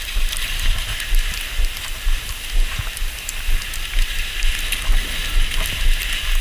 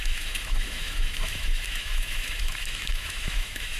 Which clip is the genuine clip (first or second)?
first